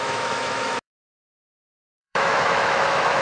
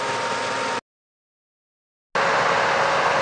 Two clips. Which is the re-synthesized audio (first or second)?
first